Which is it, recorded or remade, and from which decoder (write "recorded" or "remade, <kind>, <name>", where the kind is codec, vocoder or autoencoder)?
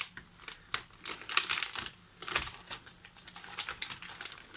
remade, vocoder, BigVGAN v2